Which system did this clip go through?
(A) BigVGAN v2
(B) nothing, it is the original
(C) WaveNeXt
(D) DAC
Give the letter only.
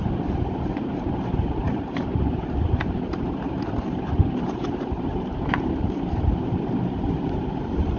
A